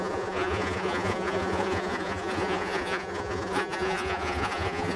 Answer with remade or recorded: remade